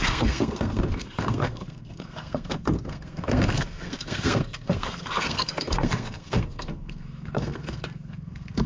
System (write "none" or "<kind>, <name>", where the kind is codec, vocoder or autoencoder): codec, SNAC